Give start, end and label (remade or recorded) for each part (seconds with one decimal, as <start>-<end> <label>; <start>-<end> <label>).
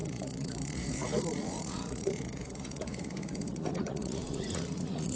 0.0-5.2 remade